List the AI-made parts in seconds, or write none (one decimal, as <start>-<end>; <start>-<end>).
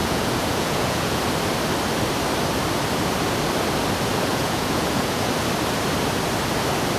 0.0-1.2; 4.3-5.3